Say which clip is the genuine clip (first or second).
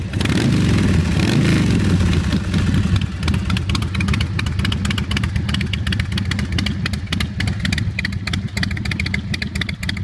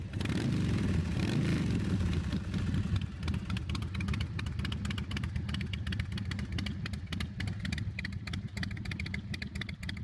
first